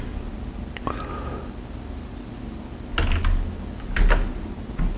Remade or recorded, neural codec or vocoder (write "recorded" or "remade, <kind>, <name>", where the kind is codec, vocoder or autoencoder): recorded